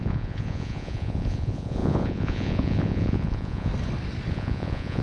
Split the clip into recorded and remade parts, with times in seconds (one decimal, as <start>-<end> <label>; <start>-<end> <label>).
0.0-3.7 remade; 3.7-4.3 recorded; 4.3-5.0 remade